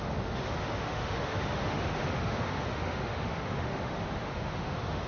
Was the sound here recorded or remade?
remade